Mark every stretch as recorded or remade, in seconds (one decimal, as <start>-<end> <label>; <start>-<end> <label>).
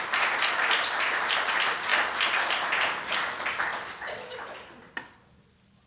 0.0-5.9 recorded